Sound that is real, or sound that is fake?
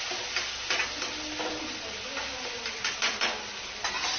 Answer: real